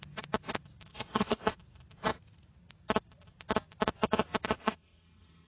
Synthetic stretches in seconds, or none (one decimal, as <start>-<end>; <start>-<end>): 0.9-1.5; 4.6-5.5